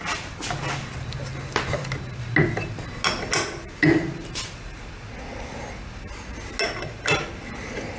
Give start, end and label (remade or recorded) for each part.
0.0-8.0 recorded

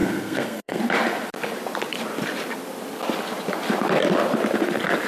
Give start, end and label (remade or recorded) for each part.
0.0-0.8 remade; 0.8-5.1 recorded

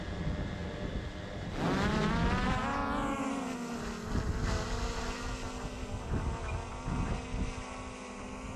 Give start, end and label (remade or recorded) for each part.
0.0-8.6 recorded

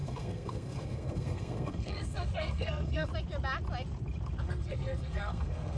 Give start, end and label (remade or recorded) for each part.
0.0-3.1 remade; 3.1-4.4 recorded; 4.4-5.8 remade

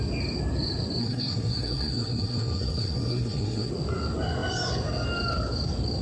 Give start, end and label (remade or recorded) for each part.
0.0-1.0 recorded; 1.0-3.7 remade; 3.7-6.0 recorded

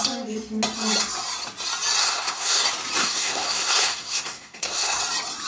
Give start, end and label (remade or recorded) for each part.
0.0-2.0 recorded; 2.0-2.6 remade; 2.6-3.0 recorded; 3.0-5.0 remade; 5.0-5.5 recorded

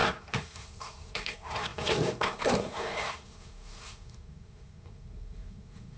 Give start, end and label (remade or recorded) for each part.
0.0-6.0 remade

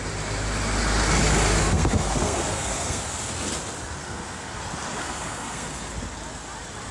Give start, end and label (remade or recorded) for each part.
0.0-1.6 recorded; 1.6-3.1 remade; 3.1-4.0 recorded; 4.0-4.6 remade; 4.6-5.0 recorded; 5.0-5.9 remade; 5.9-6.9 recorded